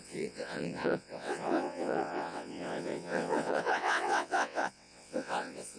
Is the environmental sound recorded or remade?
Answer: remade